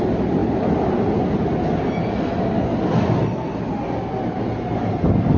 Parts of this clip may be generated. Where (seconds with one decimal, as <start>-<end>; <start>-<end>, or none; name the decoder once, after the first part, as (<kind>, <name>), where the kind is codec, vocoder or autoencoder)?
none